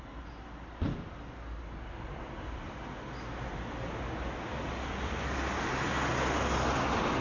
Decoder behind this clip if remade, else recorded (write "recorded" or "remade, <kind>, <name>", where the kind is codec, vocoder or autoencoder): recorded